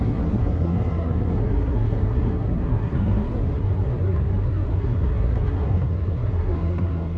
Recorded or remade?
remade